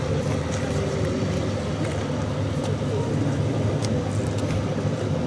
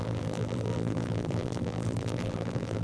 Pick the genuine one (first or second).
first